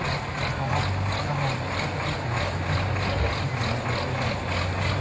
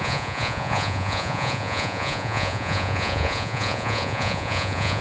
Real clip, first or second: first